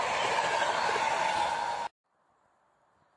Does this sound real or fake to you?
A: real